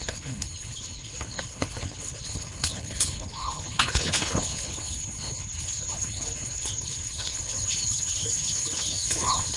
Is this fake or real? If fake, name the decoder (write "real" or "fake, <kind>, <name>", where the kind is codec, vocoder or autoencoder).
fake, codec, HILCodec